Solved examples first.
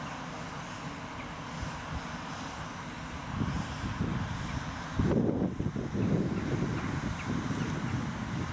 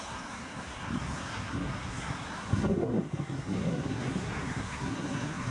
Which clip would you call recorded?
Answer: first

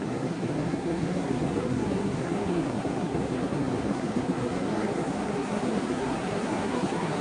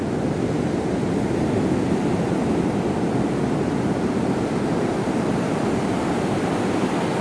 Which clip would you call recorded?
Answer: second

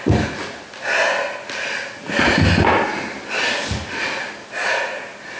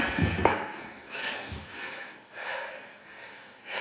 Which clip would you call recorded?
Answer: first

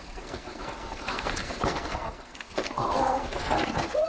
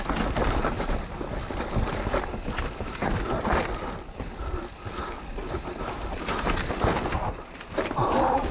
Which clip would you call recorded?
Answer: second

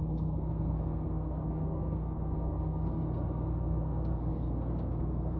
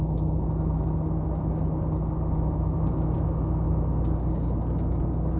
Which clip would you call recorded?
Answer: second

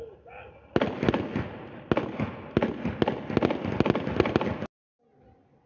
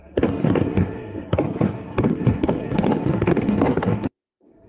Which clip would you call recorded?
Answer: first